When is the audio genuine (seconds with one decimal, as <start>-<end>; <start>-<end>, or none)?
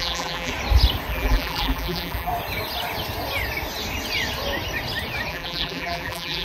0.5-1.1; 2.3-5.3